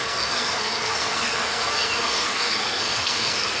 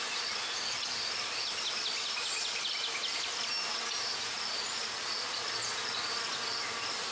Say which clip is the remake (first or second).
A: first